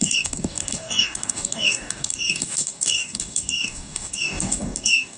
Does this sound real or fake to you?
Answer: fake